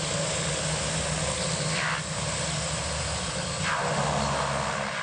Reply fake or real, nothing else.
real